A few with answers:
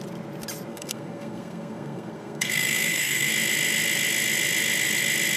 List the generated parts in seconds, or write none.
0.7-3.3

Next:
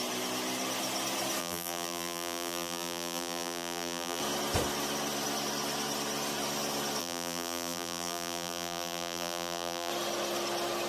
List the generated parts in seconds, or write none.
1.4-4.2; 7.0-9.9